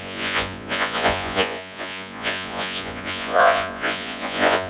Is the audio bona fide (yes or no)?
no